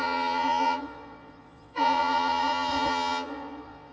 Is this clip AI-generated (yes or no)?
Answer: yes